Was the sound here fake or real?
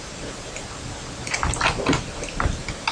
real